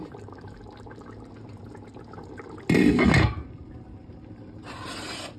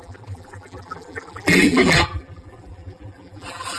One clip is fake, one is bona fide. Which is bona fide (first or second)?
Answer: first